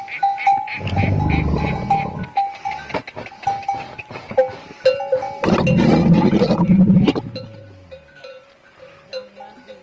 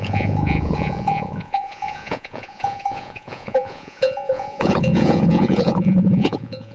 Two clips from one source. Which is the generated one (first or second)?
second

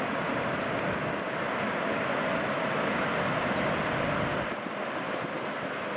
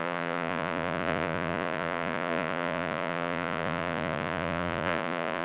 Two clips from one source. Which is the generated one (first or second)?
second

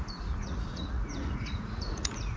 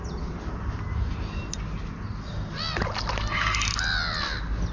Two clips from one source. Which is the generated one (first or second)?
first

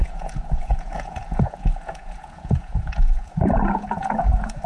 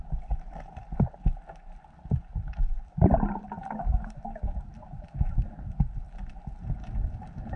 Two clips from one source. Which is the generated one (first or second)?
first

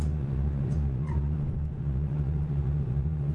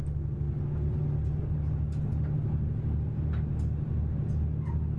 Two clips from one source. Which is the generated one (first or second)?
first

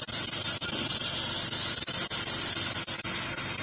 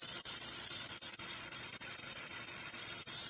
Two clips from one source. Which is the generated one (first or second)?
second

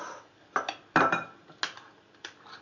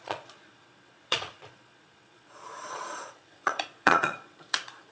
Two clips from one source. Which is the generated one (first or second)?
second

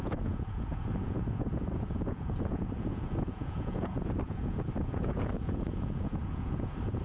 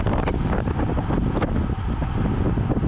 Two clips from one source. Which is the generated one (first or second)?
first